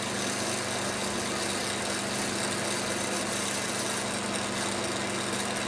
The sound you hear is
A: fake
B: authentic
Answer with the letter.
B